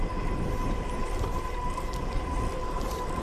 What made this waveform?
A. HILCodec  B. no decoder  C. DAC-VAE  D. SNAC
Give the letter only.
B